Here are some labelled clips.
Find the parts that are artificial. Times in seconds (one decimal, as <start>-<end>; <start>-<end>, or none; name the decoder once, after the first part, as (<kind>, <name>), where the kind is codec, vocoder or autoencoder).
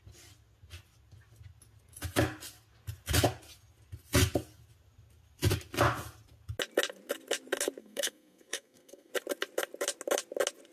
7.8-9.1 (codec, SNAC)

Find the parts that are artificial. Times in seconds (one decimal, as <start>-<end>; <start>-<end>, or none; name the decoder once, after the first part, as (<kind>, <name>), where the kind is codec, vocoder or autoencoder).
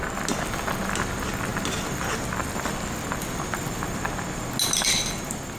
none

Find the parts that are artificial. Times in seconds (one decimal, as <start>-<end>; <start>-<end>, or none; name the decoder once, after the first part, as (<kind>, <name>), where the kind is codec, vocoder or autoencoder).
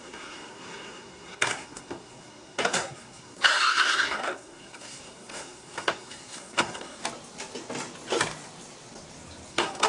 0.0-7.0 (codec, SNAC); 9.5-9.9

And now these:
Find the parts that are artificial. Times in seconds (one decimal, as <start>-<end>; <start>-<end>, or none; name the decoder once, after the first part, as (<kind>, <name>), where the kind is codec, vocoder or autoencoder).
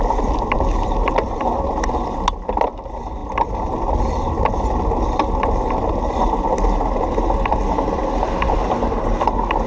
none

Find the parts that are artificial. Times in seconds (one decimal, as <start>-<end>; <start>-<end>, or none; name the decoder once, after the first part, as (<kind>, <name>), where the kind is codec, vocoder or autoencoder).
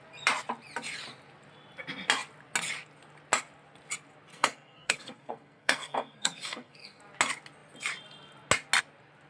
4.3-7.0 (codec, SNAC)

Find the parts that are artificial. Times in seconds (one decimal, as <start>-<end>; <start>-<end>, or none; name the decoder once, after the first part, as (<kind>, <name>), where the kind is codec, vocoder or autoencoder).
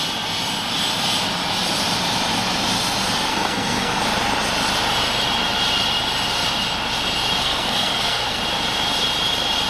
3.3-4.0 (codec, SNAC); 7.4-8.4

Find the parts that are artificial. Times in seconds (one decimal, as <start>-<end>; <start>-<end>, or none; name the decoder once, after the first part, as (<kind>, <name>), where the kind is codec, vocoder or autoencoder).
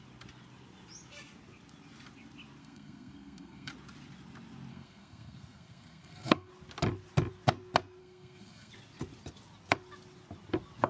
2.6-3.7 (codec, SNAC); 4.7-6.5; 8.0-8.7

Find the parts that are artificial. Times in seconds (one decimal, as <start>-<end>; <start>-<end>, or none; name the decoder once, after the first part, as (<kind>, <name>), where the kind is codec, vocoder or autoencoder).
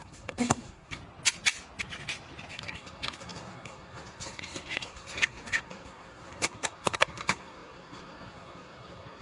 0.0-1.0 (codec, SNAC); 2.5-9.2